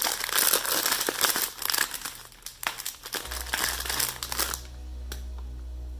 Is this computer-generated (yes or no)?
no